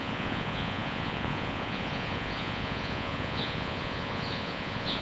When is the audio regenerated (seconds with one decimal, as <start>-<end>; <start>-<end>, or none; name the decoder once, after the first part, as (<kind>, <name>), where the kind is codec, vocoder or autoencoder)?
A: 0.0-5.0 (vocoder, Vocos)